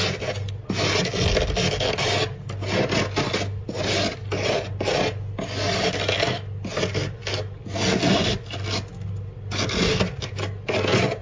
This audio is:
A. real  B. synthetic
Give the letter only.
A